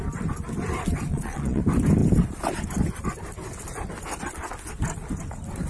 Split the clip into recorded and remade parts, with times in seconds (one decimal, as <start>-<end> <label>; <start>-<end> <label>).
0.0-1.1 recorded; 1.1-1.6 remade; 1.6-5.7 recorded